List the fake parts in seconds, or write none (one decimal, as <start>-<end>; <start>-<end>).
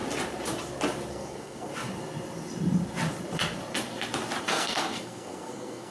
1.1-1.7; 4.4-5.9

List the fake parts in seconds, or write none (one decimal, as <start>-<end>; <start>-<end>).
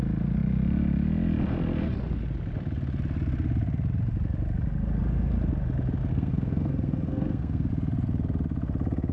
6.1-7.7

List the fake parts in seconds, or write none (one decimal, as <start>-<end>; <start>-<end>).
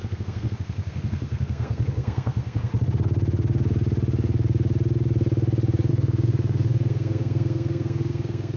0.0-2.7; 5.9-8.6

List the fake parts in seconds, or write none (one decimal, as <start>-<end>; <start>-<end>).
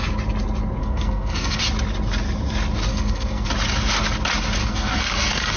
0.8-1.6; 2.9-3.5; 4.6-5.6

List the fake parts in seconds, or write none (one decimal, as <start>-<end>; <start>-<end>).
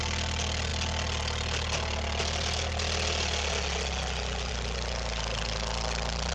none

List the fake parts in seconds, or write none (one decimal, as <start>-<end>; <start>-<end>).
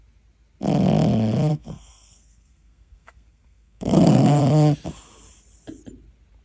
1.5-4.4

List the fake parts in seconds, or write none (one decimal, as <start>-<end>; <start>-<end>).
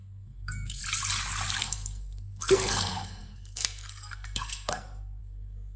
0.0-0.8; 1.6-5.8